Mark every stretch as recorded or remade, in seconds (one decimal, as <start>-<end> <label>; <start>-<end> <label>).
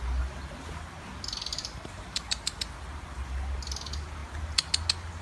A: 0.0-1.5 recorded; 1.5-2.6 remade; 2.6-5.2 recorded